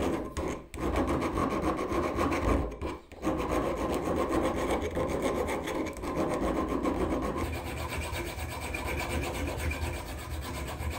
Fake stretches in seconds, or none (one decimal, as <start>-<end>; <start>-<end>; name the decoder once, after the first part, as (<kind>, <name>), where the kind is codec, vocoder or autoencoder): none